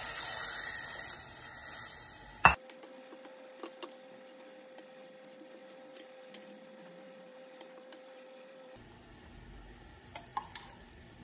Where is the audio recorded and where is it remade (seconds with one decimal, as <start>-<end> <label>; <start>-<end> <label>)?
0.0-5.6 recorded; 5.6-8.8 remade; 8.8-10.3 recorded; 10.3-11.2 remade